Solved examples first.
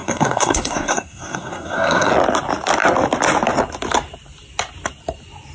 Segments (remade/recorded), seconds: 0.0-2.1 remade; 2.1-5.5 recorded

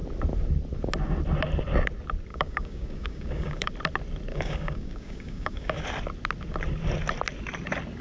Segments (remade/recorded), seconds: 0.0-2.3 recorded; 2.3-3.7 remade; 3.7-4.3 recorded; 4.3-5.8 remade; 5.8-8.0 recorded

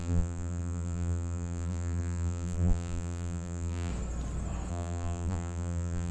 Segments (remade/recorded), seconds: 0.0-3.9 remade; 3.9-4.7 recorded; 4.7-6.1 remade

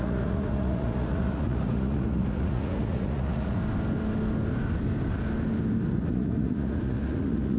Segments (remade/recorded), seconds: 0.0-3.6 remade; 3.6-5.9 recorded; 5.9-7.6 remade

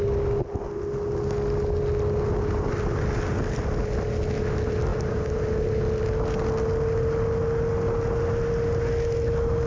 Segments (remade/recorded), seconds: 0.0-9.7 recorded

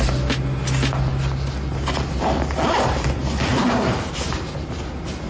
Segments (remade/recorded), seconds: 0.0-3.5 recorded; 3.5-4.5 remade; 4.5-5.3 recorded

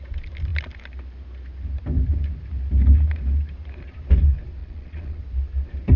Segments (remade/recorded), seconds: 0.0-4.6 recorded; 4.6-5.2 remade; 5.2-6.0 recorded